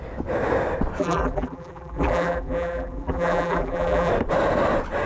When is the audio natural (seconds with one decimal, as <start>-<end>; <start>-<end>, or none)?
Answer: 0.0-1.0; 4.1-5.1